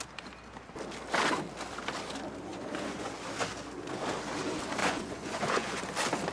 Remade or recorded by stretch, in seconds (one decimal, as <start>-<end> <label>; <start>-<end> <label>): 0.0-2.5 recorded; 2.5-3.1 remade; 3.1-4.8 recorded; 4.8-5.8 remade; 5.8-6.3 recorded